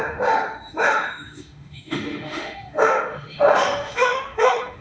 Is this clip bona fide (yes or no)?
no